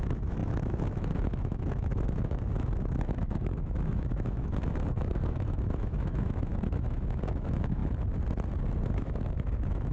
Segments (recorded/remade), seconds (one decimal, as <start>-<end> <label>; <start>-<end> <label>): 0.0-7.8 remade; 7.8-8.8 recorded; 8.8-9.9 remade